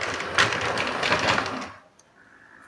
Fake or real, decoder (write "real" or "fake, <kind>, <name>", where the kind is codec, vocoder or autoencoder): real